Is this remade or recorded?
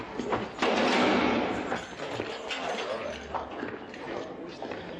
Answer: recorded